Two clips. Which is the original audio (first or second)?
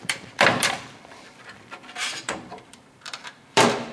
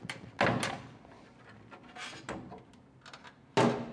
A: second